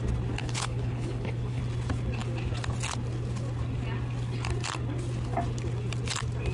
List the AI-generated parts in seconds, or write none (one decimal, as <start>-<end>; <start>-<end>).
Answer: 0.4-1.6